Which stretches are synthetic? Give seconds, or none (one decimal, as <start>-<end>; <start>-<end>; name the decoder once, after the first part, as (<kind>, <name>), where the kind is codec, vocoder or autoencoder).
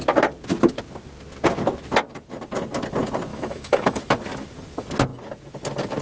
3.3-4.0 (autoencoder, DAC-VAE)